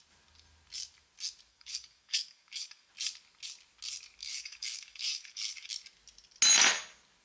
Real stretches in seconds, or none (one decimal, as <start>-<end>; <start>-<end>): 0.0-1.5; 2.9-4.2; 5.7-7.2